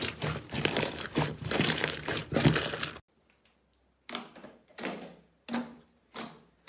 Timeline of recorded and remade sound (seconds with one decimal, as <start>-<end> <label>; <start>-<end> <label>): 0.0-2.2 remade; 2.2-4.3 recorded; 4.3-4.7 remade; 4.7-5.6 recorded; 5.6-6.7 remade